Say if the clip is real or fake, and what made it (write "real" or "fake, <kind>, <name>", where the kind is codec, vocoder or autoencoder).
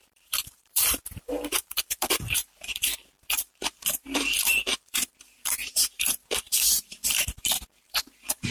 fake, vocoder, BigVGAN v2